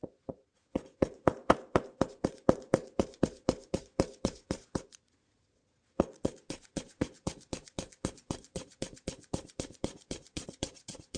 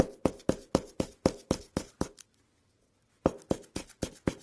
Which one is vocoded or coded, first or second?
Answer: first